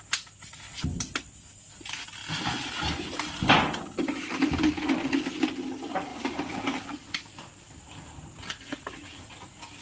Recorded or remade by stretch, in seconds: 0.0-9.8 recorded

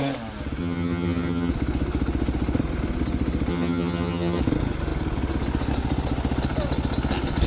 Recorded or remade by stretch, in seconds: 0.0-0.6 recorded; 0.6-1.5 remade; 1.5-3.5 recorded; 3.5-4.4 remade; 4.4-7.5 recorded

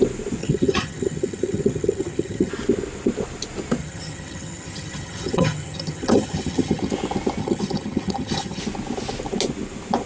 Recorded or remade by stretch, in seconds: 0.0-0.4 recorded; 0.4-2.5 remade; 2.5-3.8 recorded; 3.8-6.9 remade; 6.9-7.4 recorded; 7.4-8.6 remade; 8.6-10.1 recorded